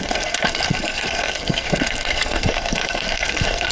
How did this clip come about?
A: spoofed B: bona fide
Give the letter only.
A